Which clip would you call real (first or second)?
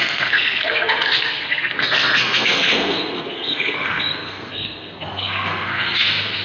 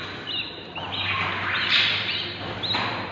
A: second